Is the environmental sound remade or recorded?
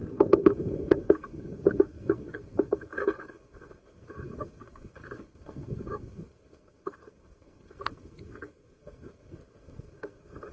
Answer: remade